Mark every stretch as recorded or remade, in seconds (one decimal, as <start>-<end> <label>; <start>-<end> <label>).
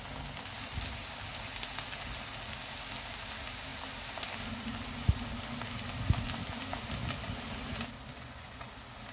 0.0-8.1 recorded; 8.1-8.7 remade; 8.7-9.1 recorded